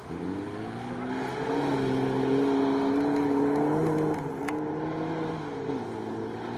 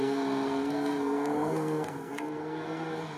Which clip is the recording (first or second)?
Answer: first